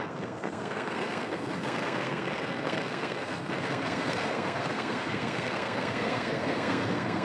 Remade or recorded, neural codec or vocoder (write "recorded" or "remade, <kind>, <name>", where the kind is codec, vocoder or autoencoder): remade, codec, SNAC